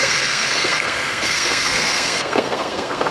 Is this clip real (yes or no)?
no